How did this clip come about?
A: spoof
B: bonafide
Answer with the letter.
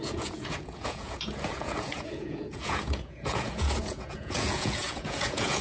A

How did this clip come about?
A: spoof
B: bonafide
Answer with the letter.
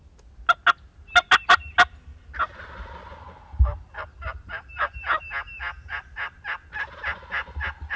B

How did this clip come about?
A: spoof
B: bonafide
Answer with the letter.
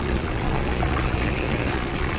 A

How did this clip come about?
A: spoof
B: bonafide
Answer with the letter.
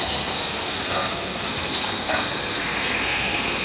A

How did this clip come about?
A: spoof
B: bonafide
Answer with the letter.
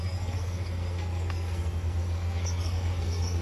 A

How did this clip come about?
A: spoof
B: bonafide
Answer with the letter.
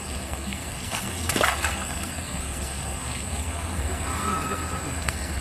A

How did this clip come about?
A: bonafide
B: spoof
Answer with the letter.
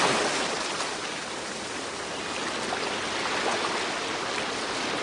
A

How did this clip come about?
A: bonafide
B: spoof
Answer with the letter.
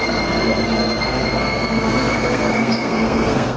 B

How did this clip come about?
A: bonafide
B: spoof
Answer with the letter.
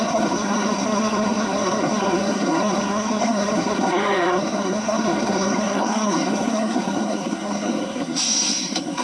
B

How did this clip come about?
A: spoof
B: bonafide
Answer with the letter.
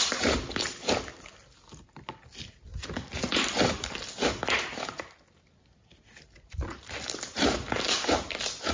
B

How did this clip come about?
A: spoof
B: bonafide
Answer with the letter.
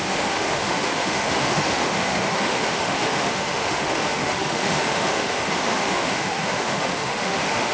A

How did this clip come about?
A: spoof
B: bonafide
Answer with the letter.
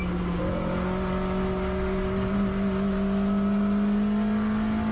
B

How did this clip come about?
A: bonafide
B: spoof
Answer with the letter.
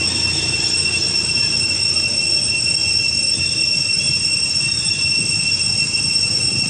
A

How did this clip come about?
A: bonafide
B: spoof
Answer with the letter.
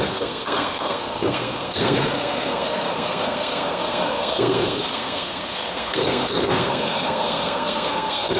B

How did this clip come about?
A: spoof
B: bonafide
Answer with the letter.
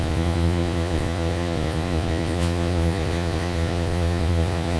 A